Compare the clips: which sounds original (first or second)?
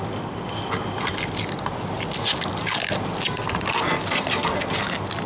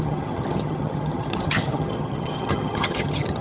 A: first